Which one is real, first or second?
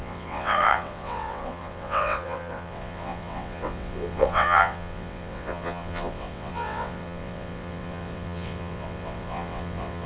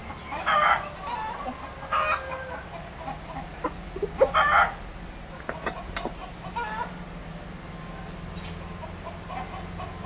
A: second